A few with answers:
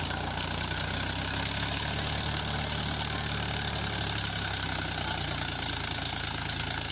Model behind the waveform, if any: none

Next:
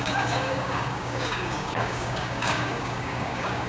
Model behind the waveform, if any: codec, DAC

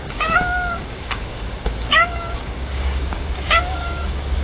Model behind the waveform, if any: codec, DAC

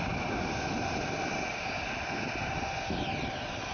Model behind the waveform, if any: none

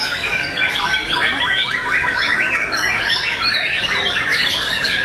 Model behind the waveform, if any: codec, DAC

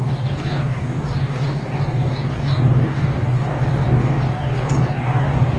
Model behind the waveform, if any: codec, DAC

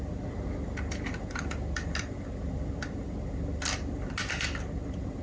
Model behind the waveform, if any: none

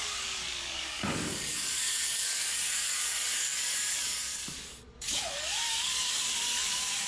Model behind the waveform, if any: codec, DAC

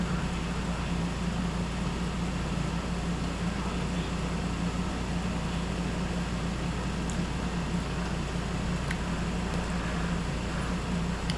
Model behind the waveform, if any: none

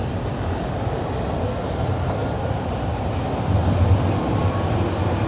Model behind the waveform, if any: none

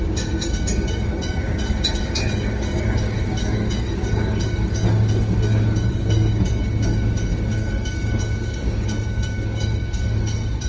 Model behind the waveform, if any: codec, DAC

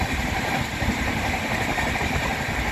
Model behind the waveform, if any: none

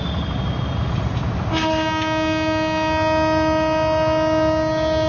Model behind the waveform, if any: none